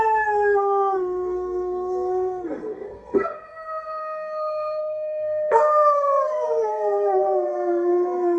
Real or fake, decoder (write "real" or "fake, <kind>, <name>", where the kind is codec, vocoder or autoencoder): fake, codec, SNAC